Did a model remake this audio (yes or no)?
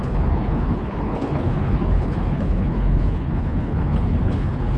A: yes